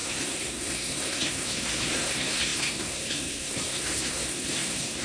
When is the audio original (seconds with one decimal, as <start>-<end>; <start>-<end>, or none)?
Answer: none